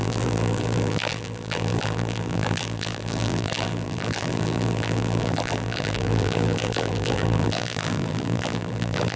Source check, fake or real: fake